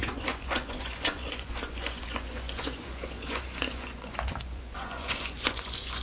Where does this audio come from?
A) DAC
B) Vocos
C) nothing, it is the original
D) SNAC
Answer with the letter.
B